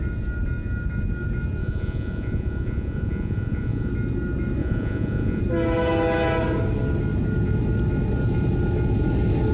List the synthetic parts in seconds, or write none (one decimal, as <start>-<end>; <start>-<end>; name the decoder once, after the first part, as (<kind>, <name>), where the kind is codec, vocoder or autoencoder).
1.6-3.9 (vocoder, Vocos); 4.6-5.4